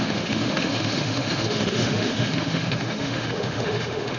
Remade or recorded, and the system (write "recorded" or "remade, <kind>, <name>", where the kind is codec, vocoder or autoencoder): remade, autoencoder, DAC-VAE